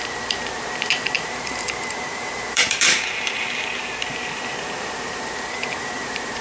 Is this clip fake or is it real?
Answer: fake